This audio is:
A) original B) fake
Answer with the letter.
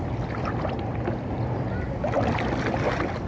A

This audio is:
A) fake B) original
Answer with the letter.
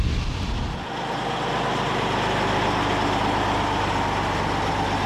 B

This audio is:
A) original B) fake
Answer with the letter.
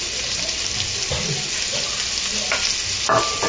A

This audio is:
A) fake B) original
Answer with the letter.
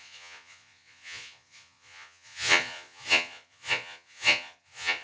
A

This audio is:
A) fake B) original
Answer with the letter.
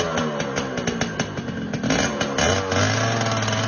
B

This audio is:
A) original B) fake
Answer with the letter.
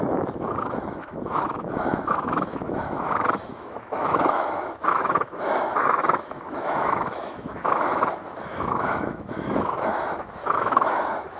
B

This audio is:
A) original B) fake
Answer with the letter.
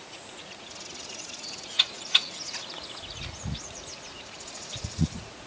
B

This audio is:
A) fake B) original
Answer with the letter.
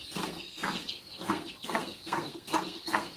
A